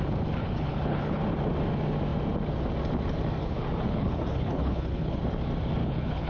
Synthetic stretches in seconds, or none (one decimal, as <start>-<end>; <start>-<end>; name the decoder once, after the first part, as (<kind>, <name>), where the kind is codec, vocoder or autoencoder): 0.4-1.2 (codec, HILCodec); 3.4-5.2; 5.8-6.3